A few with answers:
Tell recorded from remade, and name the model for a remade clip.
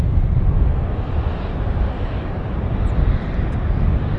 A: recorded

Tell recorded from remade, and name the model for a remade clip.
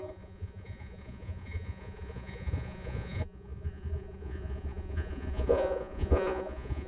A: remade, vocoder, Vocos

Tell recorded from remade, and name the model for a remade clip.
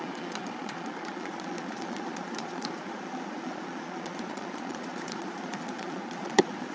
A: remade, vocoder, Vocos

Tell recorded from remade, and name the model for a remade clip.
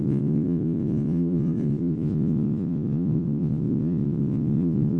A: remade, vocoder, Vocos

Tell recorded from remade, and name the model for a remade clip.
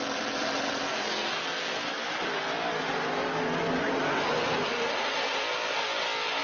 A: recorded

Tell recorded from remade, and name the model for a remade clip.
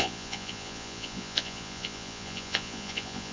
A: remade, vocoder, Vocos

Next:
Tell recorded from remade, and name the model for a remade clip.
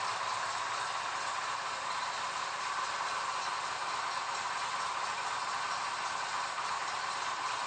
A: recorded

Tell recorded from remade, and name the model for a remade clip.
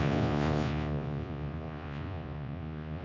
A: remade, vocoder, Vocos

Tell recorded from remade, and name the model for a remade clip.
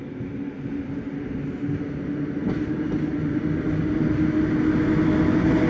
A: recorded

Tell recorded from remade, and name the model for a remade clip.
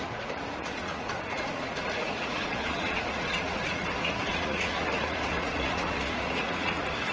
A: remade, vocoder, Vocos